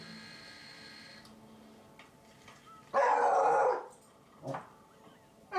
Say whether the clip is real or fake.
real